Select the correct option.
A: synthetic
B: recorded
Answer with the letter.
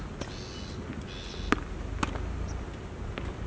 B